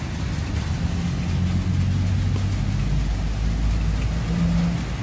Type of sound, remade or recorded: recorded